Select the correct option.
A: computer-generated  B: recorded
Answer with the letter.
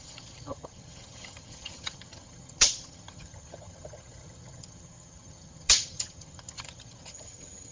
A